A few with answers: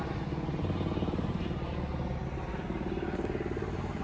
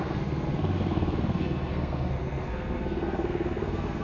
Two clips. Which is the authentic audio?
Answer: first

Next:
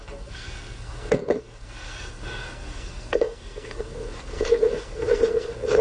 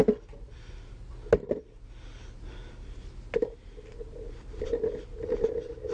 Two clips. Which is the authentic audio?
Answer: second